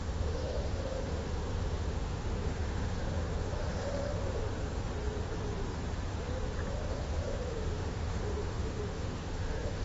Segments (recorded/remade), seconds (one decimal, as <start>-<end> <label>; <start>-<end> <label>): 0.0-4.4 remade; 4.4-6.9 recorded; 6.9-9.8 remade